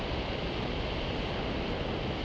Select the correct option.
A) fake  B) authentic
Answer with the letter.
B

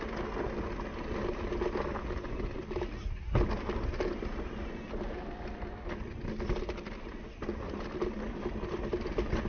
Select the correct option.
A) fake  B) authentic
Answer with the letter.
B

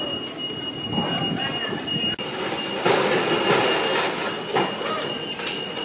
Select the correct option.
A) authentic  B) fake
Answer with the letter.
A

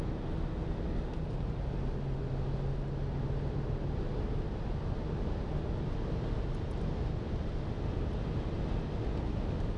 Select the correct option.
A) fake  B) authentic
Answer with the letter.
B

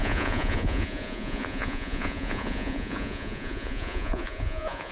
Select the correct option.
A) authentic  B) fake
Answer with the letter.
B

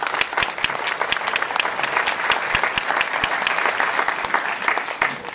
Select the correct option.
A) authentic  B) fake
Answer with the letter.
A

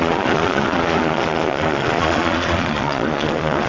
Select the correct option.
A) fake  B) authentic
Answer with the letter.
A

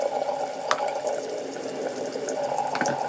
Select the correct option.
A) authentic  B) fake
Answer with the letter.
A